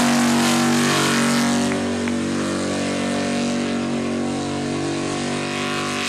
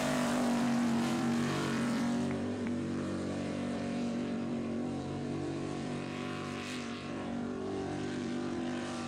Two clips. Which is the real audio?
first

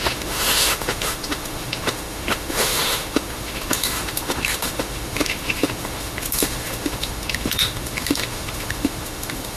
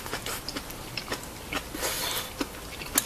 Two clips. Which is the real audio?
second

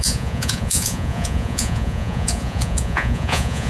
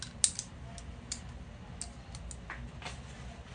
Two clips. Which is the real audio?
second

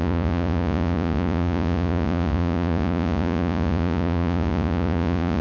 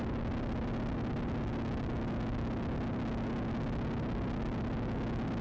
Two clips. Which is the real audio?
second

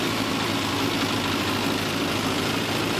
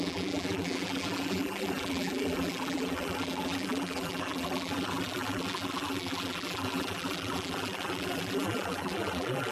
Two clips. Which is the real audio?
first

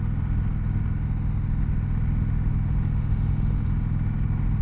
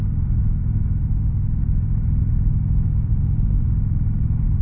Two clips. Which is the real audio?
first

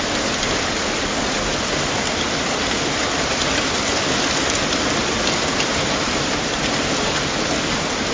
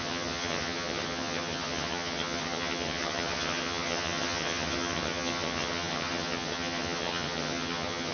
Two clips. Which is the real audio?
first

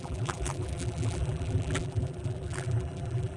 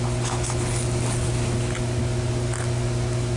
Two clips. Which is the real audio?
second